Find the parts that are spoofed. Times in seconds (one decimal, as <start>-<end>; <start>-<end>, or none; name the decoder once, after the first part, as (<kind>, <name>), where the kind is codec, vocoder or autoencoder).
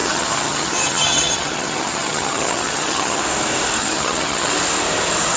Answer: 0.0-3.2 (vocoder, HiFi-GAN); 3.8-4.5